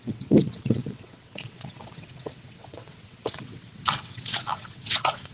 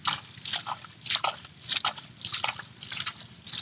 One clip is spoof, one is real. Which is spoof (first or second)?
first